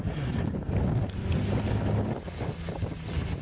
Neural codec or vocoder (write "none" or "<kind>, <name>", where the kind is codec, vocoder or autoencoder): none